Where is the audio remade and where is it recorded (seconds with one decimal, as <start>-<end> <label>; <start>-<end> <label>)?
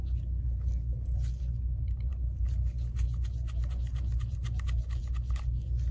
0.0-5.9 recorded